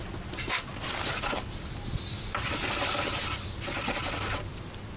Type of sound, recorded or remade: recorded